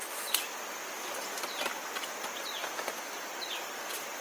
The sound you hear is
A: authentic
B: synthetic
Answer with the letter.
A